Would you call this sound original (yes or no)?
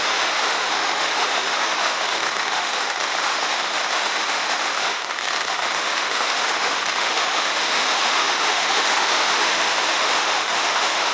no